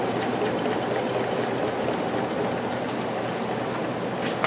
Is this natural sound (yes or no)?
yes